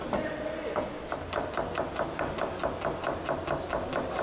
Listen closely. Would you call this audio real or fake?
real